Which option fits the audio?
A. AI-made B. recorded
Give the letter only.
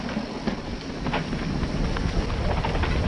B